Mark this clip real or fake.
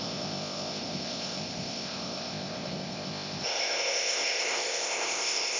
fake